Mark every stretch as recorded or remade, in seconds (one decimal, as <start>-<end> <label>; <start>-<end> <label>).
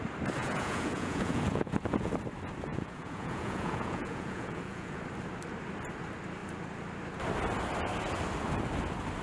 0.0-0.4 recorded; 0.4-2.1 remade; 2.1-2.7 recorded; 2.7-5.0 remade; 5.0-9.2 recorded